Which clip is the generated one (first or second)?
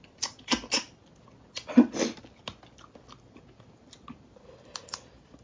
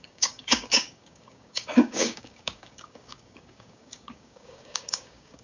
second